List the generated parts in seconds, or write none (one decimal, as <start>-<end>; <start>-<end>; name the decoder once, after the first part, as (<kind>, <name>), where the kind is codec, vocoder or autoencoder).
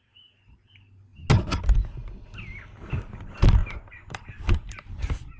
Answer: 3.6-5.4 (vocoder, BigVGAN v2)